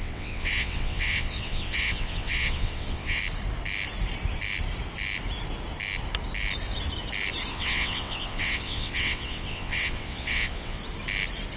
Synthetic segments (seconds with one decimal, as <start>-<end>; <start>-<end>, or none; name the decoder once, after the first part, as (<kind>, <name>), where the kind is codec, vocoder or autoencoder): 0.0-3.2 (vocoder, WaveNeXt); 7.5-10.8